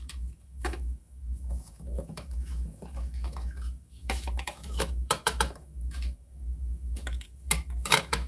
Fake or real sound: fake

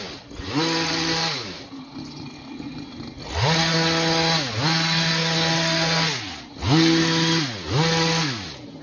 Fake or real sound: real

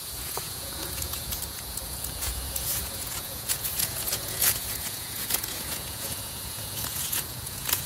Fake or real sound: fake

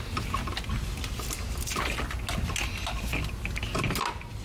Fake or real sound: real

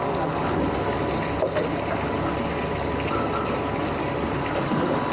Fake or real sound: real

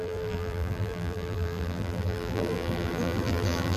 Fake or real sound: fake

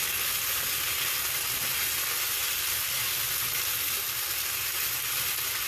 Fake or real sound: real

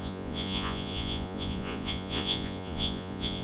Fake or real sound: fake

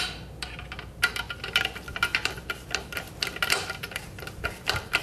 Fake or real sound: real